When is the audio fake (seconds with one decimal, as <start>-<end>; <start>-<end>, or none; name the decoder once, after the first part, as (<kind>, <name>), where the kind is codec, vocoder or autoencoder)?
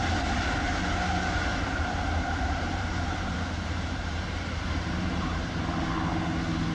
1.5-5.5 (vocoder, BigVGAN v2)